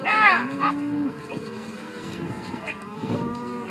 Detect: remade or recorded remade